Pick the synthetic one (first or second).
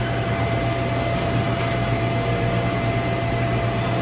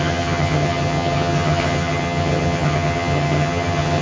second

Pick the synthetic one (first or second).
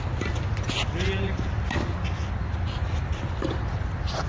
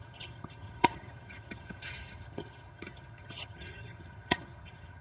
second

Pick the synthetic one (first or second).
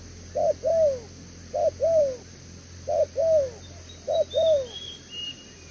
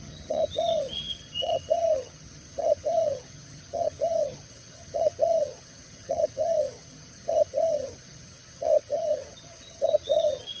second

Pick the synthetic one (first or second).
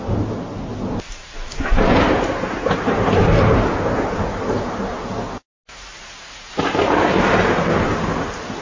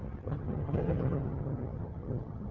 second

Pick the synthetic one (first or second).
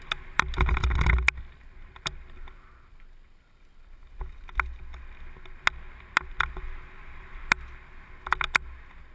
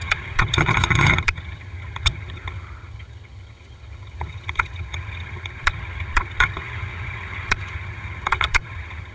second